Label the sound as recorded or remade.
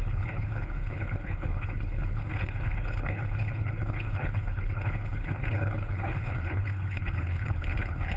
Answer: remade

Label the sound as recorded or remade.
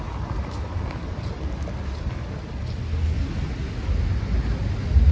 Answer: recorded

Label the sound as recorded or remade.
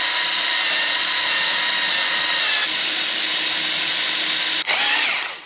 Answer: recorded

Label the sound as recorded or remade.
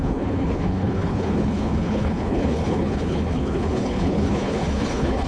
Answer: remade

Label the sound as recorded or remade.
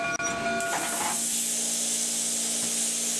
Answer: recorded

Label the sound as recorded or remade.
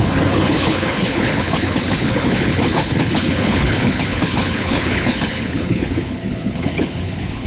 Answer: remade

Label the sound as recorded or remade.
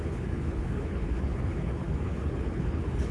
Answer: remade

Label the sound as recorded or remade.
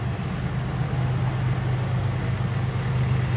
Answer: recorded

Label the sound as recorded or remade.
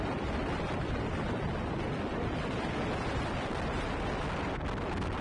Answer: recorded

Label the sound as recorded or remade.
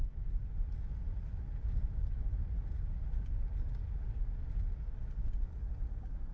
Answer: recorded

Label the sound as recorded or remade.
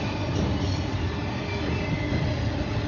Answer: recorded